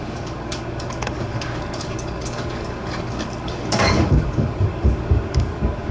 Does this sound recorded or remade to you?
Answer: remade